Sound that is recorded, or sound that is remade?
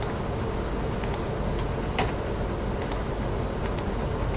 recorded